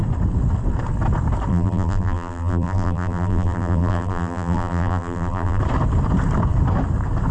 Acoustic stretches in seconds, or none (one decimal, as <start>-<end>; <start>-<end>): 0.0-1.5; 5.6-7.3